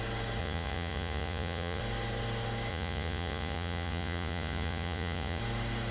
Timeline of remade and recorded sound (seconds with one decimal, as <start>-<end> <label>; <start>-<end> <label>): 0.0-0.4 recorded; 0.4-1.8 remade; 1.8-2.7 recorded; 2.7-5.4 remade; 5.4-5.9 recorded